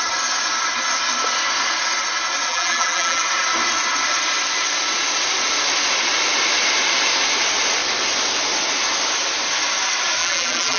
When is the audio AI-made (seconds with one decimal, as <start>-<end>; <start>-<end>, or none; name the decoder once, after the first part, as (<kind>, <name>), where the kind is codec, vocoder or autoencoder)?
2.5-3.2 (vocoder, BigVGAN v2); 10.2-10.8